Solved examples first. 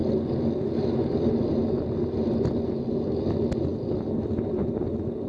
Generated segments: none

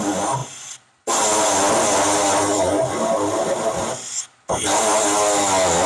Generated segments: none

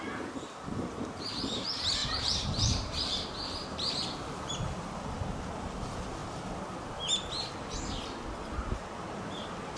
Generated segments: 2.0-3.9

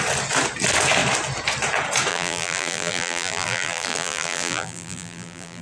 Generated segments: 2.1-5.6

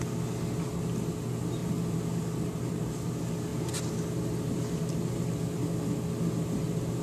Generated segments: 3.5-4.9

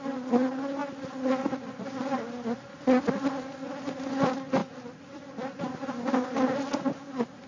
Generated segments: 4.6-5.6

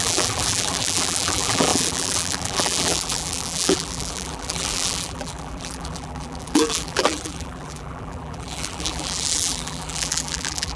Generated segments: 0.0-10.8